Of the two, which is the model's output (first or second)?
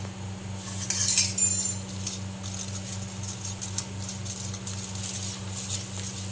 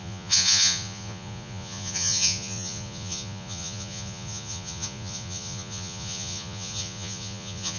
second